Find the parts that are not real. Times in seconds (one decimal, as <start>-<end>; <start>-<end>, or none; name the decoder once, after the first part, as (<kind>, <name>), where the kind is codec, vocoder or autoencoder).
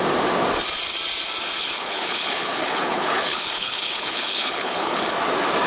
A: 1.6-5.0 (codec, HILCodec)